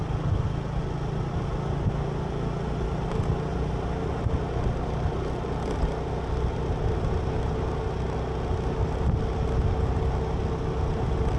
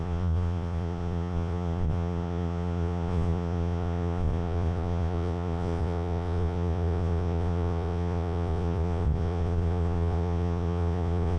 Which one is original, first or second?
first